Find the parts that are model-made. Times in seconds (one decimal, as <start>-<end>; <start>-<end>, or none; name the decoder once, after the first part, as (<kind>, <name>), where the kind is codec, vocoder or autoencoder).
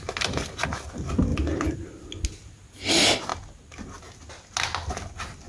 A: none